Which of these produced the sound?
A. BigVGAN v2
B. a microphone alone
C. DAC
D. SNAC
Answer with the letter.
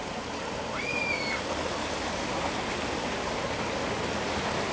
B